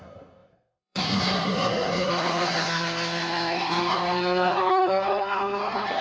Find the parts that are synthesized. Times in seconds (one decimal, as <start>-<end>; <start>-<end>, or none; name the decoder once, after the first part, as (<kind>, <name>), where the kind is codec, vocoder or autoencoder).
0.0-6.0 (codec, SNAC)